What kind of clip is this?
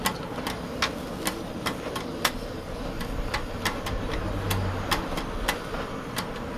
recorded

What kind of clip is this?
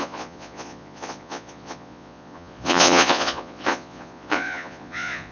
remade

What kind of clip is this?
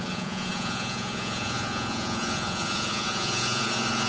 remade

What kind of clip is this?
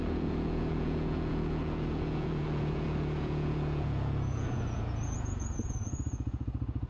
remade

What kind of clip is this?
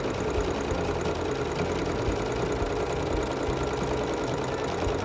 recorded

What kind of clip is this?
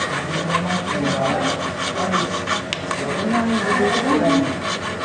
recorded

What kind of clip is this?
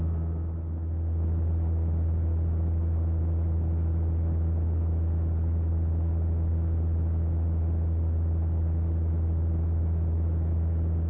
recorded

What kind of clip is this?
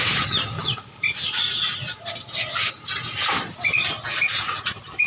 recorded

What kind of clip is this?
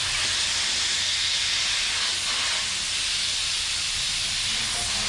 recorded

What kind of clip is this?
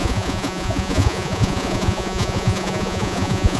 remade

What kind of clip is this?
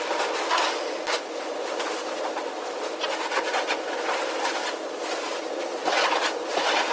recorded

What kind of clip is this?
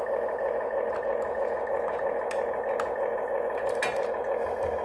recorded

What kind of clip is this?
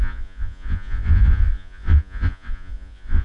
remade